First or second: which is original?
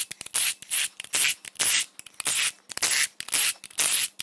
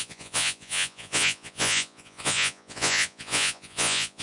first